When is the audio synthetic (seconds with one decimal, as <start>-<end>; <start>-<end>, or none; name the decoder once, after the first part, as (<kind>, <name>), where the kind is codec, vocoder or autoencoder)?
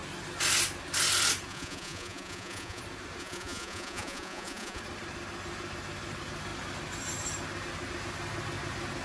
1.5-2.8 (vocoder, Vocos); 3.2-4.8